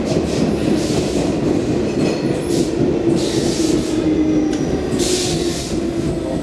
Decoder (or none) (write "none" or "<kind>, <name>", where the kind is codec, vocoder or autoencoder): none